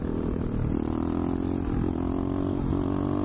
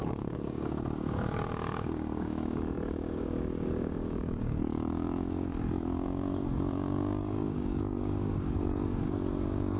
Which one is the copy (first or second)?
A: second